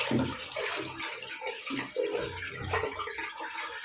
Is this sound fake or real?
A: real